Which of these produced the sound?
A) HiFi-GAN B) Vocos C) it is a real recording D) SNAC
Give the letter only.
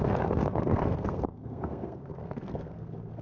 D